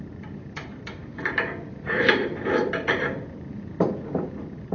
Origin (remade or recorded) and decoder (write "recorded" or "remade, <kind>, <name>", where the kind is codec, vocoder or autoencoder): remade, vocoder, BigVGAN v2